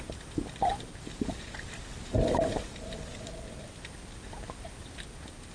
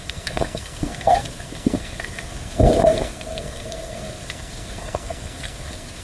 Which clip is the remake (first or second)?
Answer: second